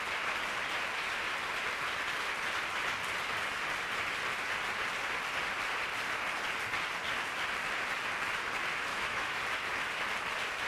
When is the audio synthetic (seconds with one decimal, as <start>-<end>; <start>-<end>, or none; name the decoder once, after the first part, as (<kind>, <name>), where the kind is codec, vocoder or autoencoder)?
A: 8.9-9.4 (autoencoder, DAC-VAE)